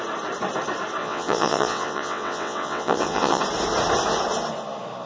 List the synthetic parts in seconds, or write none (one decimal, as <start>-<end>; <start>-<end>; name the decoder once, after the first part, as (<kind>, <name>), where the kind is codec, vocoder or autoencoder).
1.0-3.4 (vocoder, WaveNeXt)